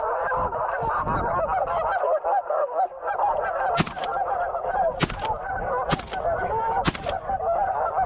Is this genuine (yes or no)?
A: yes